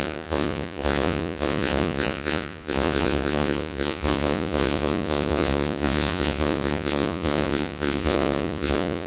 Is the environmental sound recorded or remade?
remade